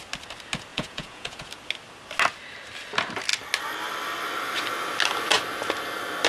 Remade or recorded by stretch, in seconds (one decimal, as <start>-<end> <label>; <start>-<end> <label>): 0.0-0.7 recorded; 0.7-1.5 remade; 1.5-6.3 recorded